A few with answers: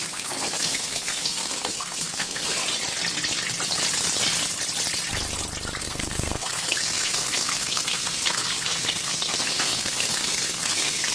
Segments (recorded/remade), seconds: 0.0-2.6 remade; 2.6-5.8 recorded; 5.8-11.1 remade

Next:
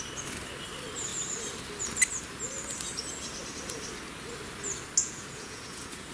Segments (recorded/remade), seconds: 0.0-5.0 recorded; 5.0-6.1 remade

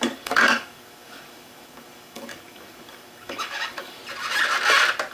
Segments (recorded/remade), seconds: 0.0-4.0 remade; 4.0-5.1 recorded

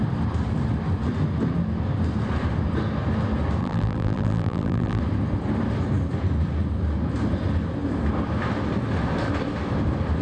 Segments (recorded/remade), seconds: 0.0-3.6 recorded; 3.6-5.0 remade; 5.0-10.2 recorded

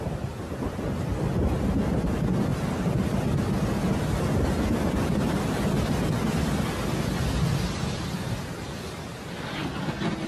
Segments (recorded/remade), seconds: 0.0-10.3 recorded

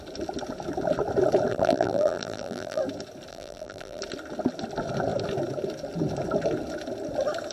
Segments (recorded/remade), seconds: 0.0-1.5 recorded; 1.5-2.8 remade; 2.8-3.3 recorded; 3.3-4.0 remade; 4.0-7.5 recorded